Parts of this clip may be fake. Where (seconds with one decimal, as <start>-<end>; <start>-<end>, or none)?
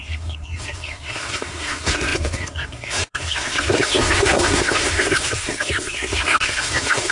0.0-7.1